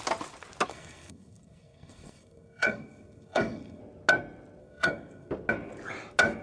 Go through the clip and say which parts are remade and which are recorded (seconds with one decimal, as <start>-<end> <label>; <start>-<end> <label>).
0.0-0.7 recorded; 0.7-3.8 remade; 3.8-4.6 recorded; 4.6-5.3 remade; 5.3-6.4 recorded